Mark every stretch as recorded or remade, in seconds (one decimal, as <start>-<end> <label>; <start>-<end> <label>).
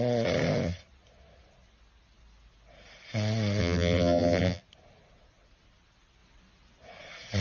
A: 0.0-3.6 recorded; 3.6-4.6 remade; 4.6-7.4 recorded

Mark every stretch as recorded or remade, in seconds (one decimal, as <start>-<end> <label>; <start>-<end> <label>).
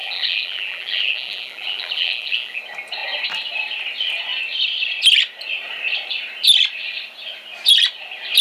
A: 0.0-2.6 remade; 2.6-8.4 recorded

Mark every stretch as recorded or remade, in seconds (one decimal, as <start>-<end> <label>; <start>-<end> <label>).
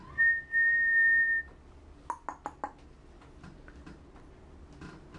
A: 0.0-5.2 recorded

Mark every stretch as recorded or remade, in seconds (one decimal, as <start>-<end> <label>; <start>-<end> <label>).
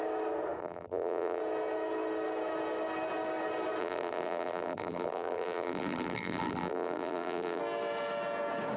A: 0.0-0.6 recorded; 0.6-1.4 remade; 1.4-3.8 recorded; 3.8-7.6 remade; 7.6-8.8 recorded